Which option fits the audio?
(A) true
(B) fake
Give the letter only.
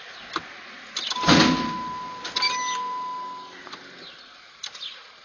A